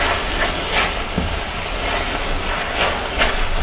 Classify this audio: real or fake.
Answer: real